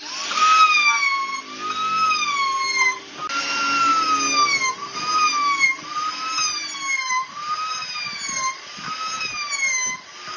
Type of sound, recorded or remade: recorded